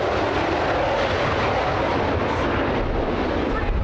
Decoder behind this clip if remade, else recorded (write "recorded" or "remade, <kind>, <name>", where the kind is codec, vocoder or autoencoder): recorded